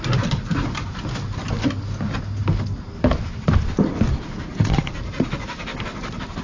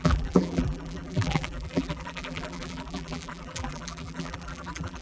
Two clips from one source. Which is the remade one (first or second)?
second